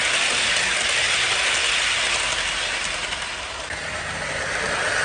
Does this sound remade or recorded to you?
recorded